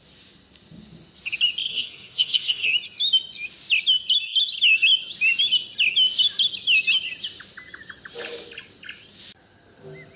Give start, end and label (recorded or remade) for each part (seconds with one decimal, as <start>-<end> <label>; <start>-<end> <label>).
0.0-1.7 recorded; 1.7-2.7 remade; 2.7-10.2 recorded